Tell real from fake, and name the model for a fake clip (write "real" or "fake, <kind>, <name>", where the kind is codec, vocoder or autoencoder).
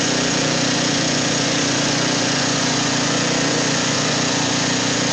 fake, vocoder, Vocos